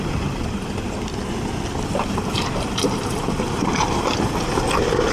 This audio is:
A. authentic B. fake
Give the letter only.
A